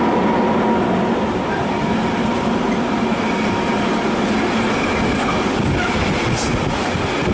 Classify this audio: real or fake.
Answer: real